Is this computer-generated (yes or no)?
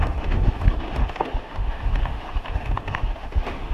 yes